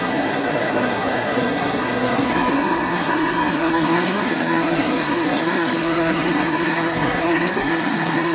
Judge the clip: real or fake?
fake